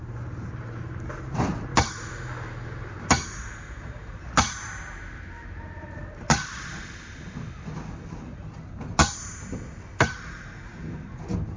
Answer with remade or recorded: recorded